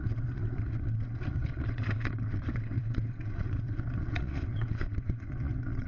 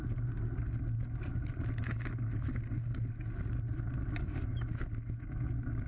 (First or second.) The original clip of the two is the second